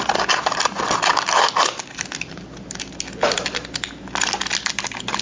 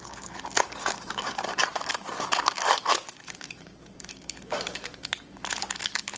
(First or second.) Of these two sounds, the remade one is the second